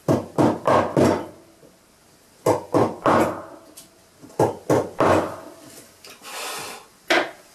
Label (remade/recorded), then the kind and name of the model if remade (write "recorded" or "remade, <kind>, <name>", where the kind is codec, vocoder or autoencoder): recorded